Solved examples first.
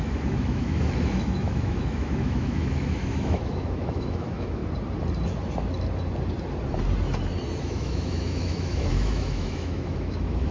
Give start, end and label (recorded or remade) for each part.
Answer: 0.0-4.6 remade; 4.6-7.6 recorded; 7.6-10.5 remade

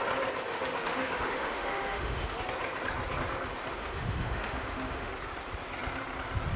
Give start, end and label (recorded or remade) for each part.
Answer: 0.0-0.5 recorded; 0.5-2.4 remade; 2.4-3.8 recorded; 3.8-5.1 remade; 5.1-6.6 recorded

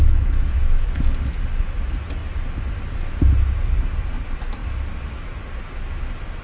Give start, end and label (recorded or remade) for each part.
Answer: 0.0-0.9 remade; 0.9-6.4 recorded

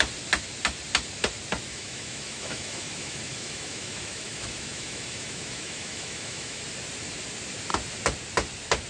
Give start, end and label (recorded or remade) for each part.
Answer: 0.0-1.7 recorded; 1.7-6.6 remade; 6.6-8.9 recorded

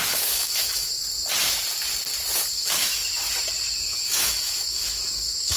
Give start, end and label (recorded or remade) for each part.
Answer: 0.0-1.0 remade; 1.0-2.5 recorded; 2.5-3.0 remade; 3.0-3.9 recorded; 3.9-5.6 remade

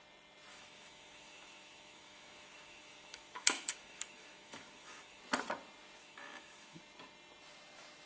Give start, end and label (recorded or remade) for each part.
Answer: 0.0-0.5 recorded; 0.5-5.2 remade; 5.2-6.0 recorded; 6.0-6.8 remade; 6.8-8.1 recorded

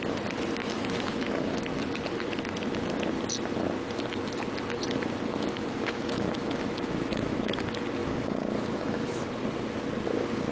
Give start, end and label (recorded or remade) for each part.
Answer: 0.0-0.6 recorded; 0.6-1.6 remade; 1.6-5.5 recorded; 5.5-7.5 remade; 7.5-8.0 recorded; 8.0-9.1 remade; 9.1-10.5 recorded